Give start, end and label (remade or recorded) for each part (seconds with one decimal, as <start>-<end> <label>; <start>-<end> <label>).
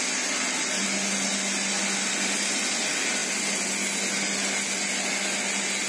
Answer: 0.0-5.9 recorded